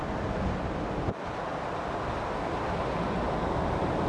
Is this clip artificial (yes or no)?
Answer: no